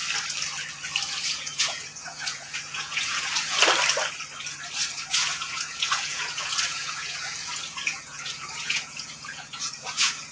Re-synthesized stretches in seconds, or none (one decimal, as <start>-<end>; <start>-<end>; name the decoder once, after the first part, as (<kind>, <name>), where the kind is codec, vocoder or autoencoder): 1.1-3.6 (vocoder, Vocos); 5.1-10.3